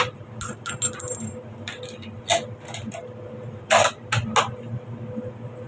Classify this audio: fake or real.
real